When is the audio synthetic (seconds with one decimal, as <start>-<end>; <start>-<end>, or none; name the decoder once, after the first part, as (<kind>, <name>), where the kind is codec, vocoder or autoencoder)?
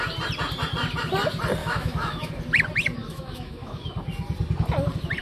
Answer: 1.6-2.3 (autoencoder, DAC-VAE); 3.0-3.9